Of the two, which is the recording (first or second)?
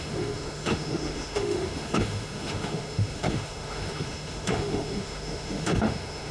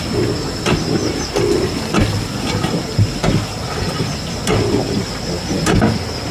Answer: second